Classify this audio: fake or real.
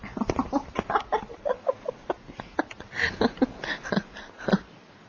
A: real